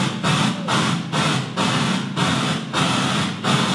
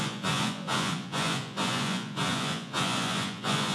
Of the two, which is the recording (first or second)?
first